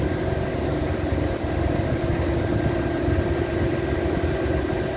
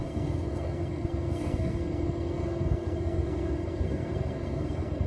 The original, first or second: first